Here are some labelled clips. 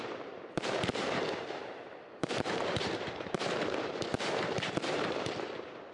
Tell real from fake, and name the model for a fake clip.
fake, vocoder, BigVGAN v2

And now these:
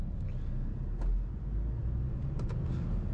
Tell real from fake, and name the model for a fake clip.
real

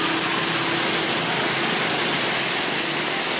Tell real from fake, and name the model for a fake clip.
real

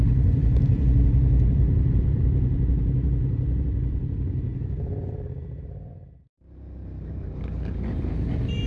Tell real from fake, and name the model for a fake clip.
fake, vocoder, BigVGAN v2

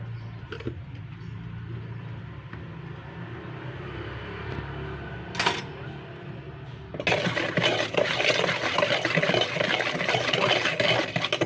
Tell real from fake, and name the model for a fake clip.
real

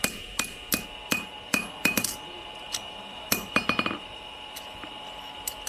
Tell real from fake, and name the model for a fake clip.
real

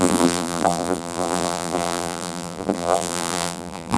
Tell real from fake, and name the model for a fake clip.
fake, vocoder, BigVGAN v2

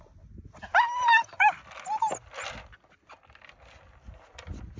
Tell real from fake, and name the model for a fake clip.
real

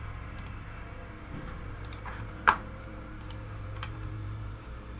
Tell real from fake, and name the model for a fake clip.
fake, vocoder, BigVGAN v2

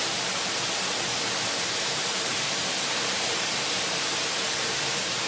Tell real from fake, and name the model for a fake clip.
fake, vocoder, BigVGAN v2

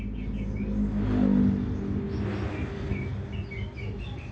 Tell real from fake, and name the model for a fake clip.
real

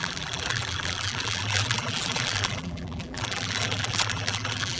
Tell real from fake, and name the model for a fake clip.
fake, vocoder, BigVGAN v2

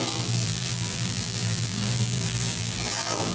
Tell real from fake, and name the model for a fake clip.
fake, vocoder, BigVGAN v2